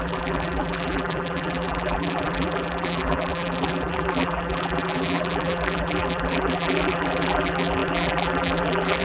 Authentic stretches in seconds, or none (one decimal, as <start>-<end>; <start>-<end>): none